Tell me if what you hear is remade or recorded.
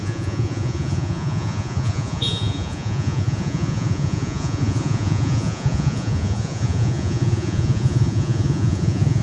remade